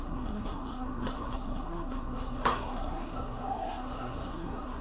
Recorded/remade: remade